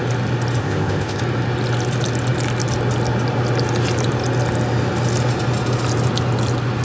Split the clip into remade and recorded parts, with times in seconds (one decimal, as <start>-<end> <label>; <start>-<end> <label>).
0.0-0.6 recorded; 0.6-1.2 remade; 1.2-6.8 recorded